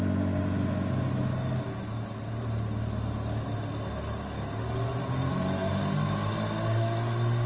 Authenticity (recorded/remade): recorded